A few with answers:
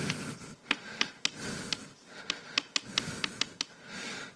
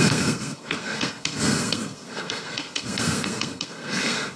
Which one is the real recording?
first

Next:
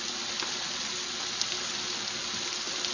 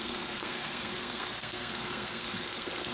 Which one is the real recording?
first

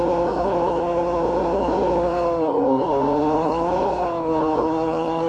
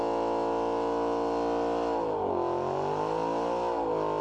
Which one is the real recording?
second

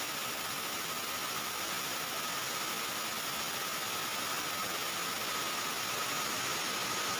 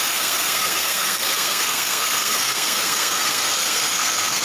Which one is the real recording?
first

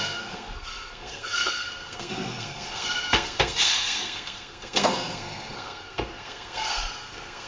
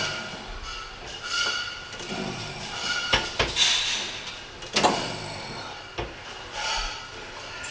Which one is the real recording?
second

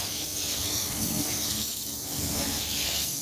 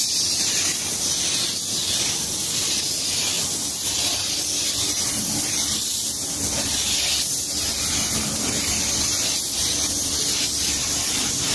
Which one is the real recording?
second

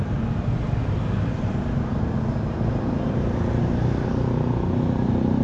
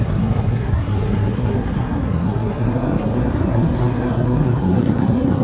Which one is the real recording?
first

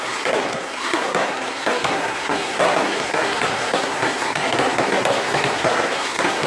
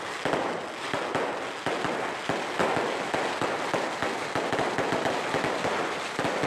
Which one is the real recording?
second